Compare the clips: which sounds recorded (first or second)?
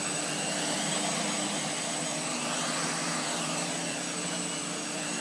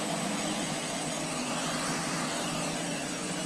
first